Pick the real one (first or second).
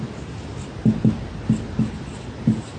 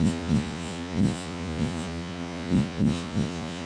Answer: first